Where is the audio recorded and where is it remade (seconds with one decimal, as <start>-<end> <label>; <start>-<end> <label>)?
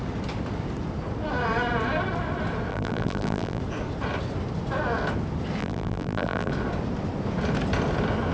0.0-2.7 recorded; 2.7-3.6 remade; 3.6-5.6 recorded; 5.6-6.5 remade; 6.5-8.3 recorded